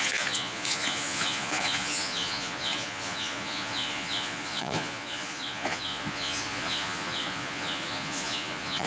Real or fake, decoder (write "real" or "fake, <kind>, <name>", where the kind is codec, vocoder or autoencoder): fake, vocoder, Vocos